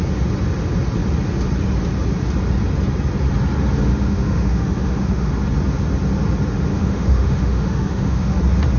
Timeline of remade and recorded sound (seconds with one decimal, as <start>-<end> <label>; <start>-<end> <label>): 0.0-3.9 recorded; 3.9-5.3 remade; 5.3-6.7 recorded; 6.7-8.4 remade; 8.4-8.8 recorded